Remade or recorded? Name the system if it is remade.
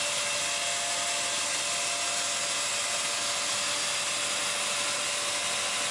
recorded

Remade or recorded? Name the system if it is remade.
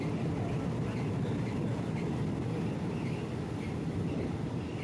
recorded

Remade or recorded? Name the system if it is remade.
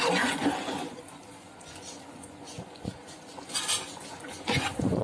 remade, vocoder, Vocos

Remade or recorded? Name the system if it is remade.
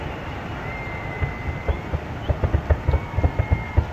recorded